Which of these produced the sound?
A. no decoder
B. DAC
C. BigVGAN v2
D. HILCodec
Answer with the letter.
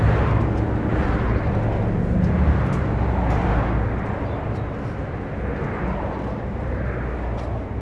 A